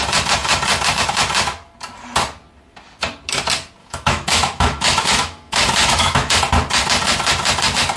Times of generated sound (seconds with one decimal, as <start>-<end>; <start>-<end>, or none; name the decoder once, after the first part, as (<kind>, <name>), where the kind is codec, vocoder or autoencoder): 3.8-6.3 (autoencoder, DAC-VAE)